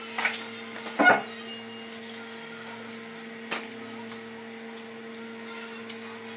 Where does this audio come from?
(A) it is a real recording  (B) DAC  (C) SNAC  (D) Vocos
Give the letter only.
A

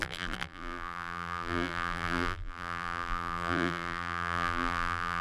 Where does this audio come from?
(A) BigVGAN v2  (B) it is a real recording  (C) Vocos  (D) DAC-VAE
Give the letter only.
A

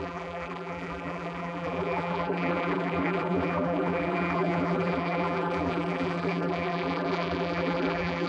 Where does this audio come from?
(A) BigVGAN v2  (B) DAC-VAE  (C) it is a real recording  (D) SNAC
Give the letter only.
A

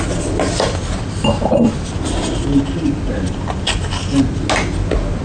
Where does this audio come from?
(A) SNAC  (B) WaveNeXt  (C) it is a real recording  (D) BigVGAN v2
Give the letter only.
C